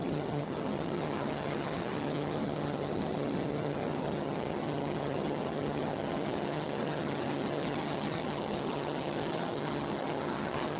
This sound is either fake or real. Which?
fake